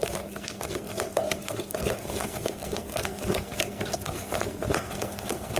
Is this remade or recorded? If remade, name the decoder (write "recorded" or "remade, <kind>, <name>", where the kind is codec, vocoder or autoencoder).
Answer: remade, codec, SNAC